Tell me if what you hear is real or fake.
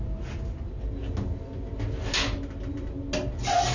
real